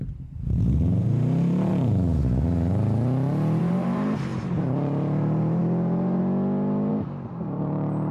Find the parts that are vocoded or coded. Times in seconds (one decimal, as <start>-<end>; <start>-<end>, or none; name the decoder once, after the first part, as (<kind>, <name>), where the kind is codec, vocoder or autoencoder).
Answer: 0.0-1.7 (vocoder, BigVGAN v2); 3.6-6.2; 6.9-8.1